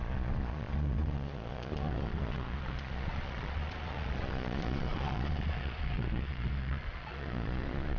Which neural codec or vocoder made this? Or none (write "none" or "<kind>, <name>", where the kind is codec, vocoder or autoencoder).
vocoder, Vocos